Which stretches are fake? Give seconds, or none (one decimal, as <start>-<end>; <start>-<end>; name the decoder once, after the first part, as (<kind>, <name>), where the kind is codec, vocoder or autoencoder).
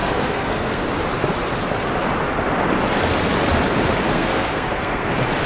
0.0-0.8 (codec, SNAC); 4.1-5.1